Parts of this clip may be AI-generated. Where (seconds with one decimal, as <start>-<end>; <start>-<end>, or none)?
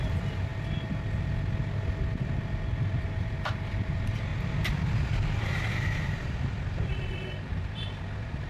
0.0-0.5; 3.1-4.3; 5.1-8.5